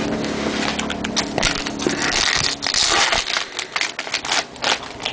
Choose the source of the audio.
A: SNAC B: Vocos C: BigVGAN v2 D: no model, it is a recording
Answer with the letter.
D